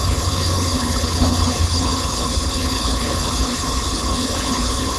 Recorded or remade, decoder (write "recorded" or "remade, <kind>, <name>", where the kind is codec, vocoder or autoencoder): remade, codec, HILCodec